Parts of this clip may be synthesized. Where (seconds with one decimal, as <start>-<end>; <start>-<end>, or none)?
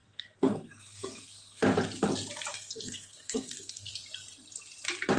0.0-1.6; 2.5-3.9